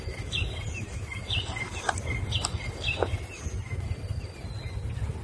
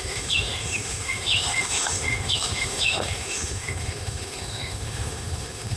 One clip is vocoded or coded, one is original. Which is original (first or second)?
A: first